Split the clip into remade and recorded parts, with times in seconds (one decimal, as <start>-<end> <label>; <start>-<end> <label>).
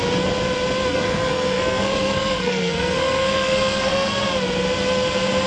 0.0-0.9 recorded; 0.9-4.2 remade; 4.2-5.5 recorded